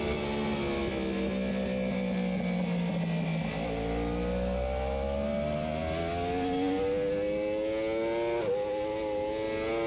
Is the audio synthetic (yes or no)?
no